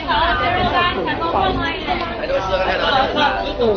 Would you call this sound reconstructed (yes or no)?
no